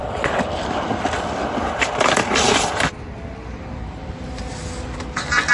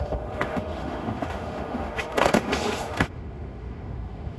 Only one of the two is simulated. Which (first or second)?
second